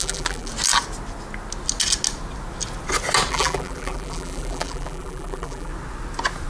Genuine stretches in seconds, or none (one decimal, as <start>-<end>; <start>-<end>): 0.5-3.3; 5.7-6.5

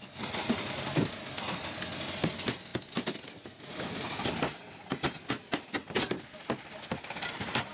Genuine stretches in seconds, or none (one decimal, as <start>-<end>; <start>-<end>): 0.0-7.7

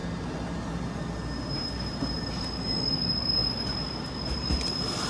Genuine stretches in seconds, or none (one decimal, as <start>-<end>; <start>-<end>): 0.0-5.1

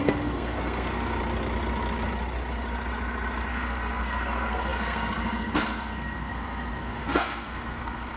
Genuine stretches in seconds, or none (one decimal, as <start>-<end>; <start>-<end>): 1.2-3.5

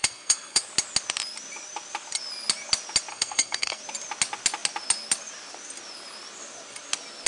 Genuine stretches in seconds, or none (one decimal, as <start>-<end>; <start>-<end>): 0.6-3.1; 3.8-7.3

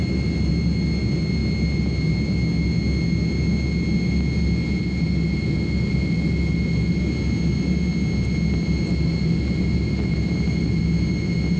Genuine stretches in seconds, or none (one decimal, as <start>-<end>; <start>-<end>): 0.0-11.6